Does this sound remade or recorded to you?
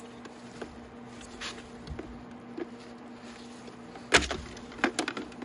recorded